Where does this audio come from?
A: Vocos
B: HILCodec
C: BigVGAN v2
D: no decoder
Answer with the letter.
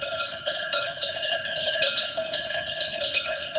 B